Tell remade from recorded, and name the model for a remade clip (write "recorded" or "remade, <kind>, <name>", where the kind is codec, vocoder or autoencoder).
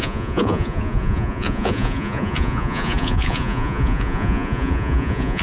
remade, vocoder, Vocos